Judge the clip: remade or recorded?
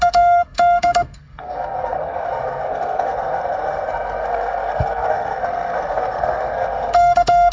remade